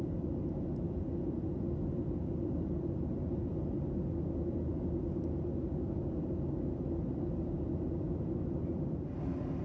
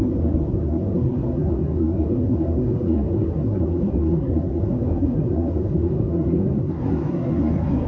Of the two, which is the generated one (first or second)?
second